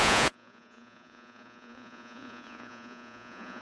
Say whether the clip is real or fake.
fake